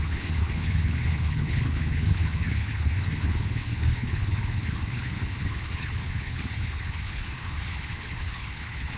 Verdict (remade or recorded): remade